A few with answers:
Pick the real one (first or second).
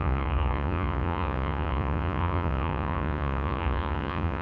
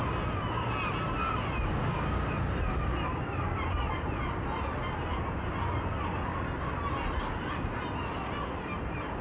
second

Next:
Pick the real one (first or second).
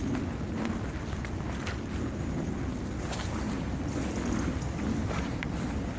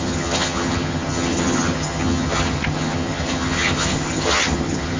first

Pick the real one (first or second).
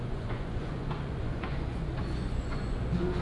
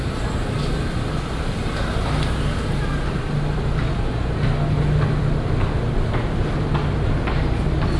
second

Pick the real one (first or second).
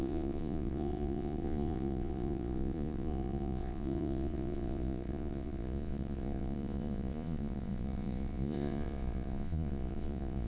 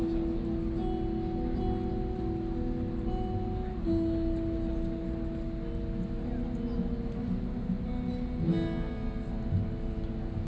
second